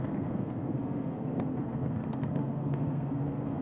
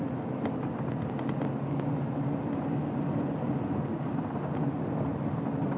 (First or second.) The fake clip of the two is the first